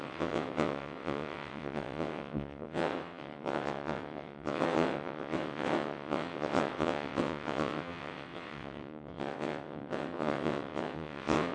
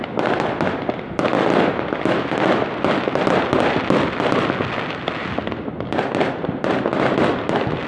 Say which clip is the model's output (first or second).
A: first